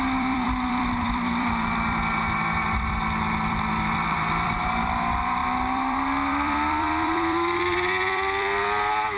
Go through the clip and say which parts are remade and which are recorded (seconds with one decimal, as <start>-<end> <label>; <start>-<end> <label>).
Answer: 0.0-9.2 remade

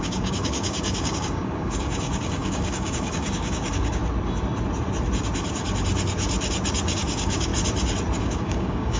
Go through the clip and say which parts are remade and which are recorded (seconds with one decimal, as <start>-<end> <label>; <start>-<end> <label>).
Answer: 0.0-4.0 remade; 4.0-6.9 recorded; 6.9-7.5 remade; 7.5-8.2 recorded; 8.2-9.0 remade

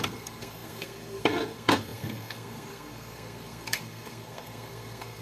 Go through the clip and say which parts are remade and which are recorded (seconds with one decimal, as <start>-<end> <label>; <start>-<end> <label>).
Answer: 0.0-5.2 remade